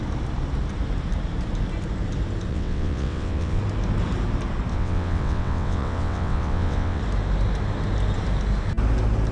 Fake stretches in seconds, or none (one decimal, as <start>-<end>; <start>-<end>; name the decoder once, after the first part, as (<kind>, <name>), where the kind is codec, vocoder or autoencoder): 2.5-3.6 (vocoder, WaveNeXt); 4.7-7.0